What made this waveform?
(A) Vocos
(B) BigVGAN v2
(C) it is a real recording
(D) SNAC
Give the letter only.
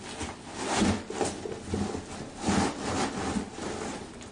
C